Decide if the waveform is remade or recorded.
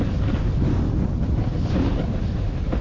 recorded